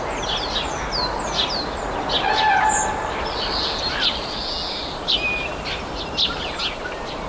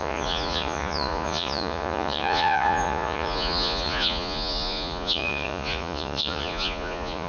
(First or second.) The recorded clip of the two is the first